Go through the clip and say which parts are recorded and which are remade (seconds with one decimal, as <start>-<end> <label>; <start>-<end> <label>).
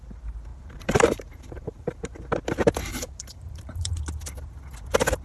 0.0-0.5 recorded; 0.5-2.3 remade; 2.3-2.9 recorded; 2.9-4.0 remade; 4.0-5.2 recorded